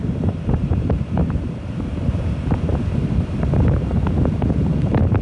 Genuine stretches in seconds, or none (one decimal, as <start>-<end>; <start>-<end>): 2.7-3.7